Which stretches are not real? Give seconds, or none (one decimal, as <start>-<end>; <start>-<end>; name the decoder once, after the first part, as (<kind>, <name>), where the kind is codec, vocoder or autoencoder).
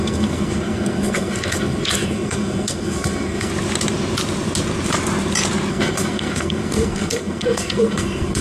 0.0-3.5 (codec, SNAC); 5.7-8.4